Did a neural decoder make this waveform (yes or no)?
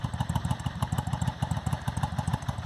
yes